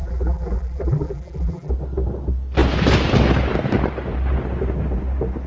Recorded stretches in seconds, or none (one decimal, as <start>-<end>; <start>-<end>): 1.7-5.5